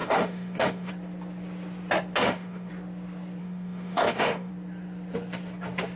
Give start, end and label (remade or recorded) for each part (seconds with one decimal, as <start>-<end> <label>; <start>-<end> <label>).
0.0-0.9 remade; 0.9-2.2 recorded; 2.2-2.7 remade; 2.7-3.4 recorded; 3.4-4.5 remade; 4.5-6.0 recorded